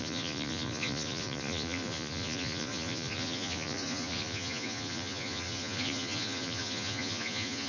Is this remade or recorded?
remade